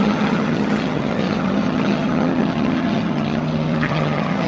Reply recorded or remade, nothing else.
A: remade